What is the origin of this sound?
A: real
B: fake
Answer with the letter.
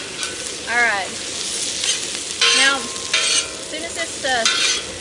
A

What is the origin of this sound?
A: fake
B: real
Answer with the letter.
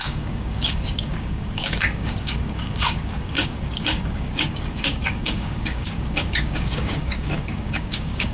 A